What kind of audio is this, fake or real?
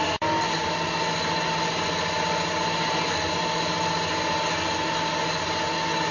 real